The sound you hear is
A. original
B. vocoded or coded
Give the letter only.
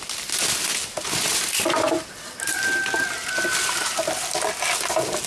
A